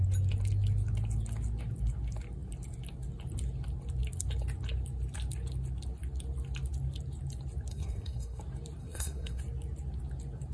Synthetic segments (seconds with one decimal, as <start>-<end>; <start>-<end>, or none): 7.7-8.4; 8.8-9.4